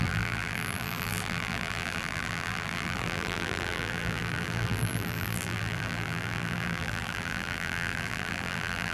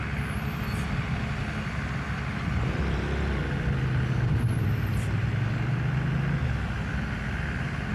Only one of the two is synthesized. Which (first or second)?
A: first